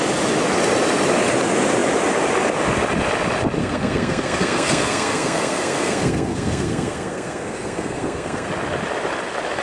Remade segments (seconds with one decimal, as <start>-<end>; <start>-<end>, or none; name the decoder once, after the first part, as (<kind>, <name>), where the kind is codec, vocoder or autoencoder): 3.6-8.5 (codec, SNAC)